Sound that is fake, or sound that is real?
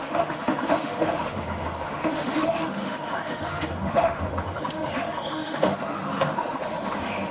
fake